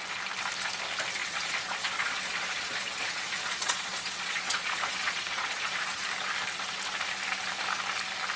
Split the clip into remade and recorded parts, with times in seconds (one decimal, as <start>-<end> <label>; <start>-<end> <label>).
0.0-1.2 recorded; 1.2-6.0 remade; 6.0-8.4 recorded